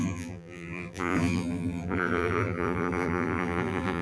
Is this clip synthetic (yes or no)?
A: yes